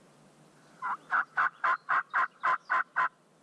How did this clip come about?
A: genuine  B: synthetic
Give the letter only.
A